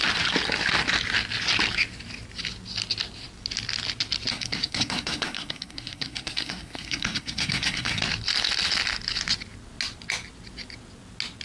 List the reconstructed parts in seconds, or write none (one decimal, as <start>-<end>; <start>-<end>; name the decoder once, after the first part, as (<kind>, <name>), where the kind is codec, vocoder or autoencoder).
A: 4.3-8.0 (codec, SNAC)